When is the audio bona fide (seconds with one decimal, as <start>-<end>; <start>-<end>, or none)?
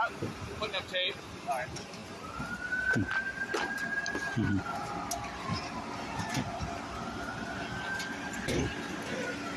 0.0-9.6